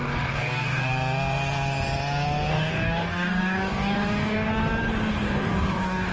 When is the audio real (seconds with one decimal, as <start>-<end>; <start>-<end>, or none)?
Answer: 0.9-2.5; 4.5-5.1